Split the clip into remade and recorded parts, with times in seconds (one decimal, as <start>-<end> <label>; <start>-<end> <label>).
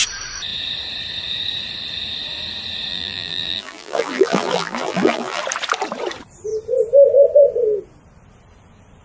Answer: 0.0-2.9 recorded; 2.9-5.4 remade; 5.4-9.0 recorded